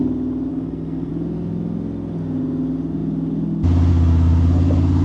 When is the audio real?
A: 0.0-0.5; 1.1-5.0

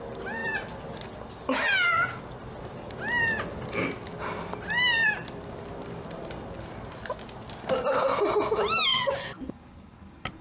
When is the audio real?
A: 0.0-8.9; 9.5-10.4

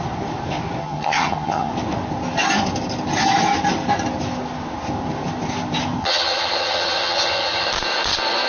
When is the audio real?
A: 0.0-0.8; 1.7-6.0; 7.7-8.5

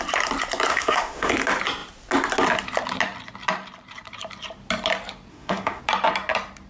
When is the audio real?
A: 0.0-0.7; 1.3-5.3; 5.8-6.7

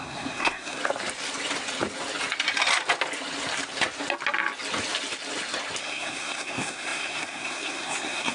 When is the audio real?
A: 0.8-5.8